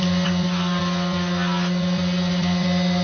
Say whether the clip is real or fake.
real